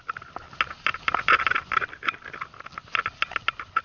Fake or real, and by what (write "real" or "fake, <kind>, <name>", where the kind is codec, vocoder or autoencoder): real